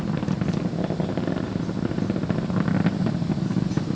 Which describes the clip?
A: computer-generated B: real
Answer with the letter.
B